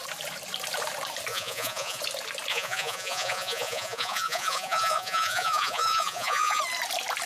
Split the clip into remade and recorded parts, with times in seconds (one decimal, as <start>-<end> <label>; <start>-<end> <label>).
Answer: 0.0-1.3 recorded; 1.3-2.0 remade; 2.0-2.5 recorded; 2.5-6.6 remade; 6.6-7.3 recorded